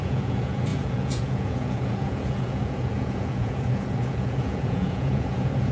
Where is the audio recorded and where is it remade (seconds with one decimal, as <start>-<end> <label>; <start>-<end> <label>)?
0.0-5.7 remade